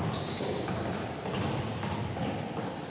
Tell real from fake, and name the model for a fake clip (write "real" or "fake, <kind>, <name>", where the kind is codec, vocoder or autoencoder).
real